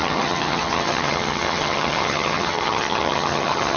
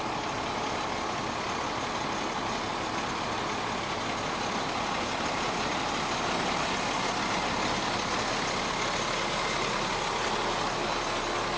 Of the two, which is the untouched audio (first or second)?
second